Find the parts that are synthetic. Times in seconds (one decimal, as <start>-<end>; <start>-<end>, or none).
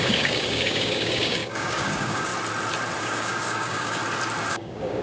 0.0-2.3; 3.0-4.0; 4.5-5.0